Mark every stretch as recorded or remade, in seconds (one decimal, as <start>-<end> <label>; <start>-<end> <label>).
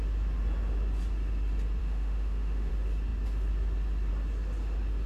0.0-1.8 recorded; 1.8-2.7 remade; 2.7-5.1 recorded